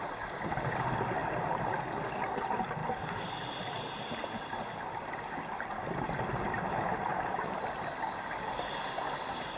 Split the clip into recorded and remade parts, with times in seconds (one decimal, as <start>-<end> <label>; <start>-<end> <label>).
0.0-2.8 recorded; 2.8-4.1 remade; 4.1-9.6 recorded